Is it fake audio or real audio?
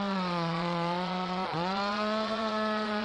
fake